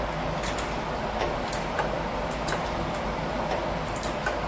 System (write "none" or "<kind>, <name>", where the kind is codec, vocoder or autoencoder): none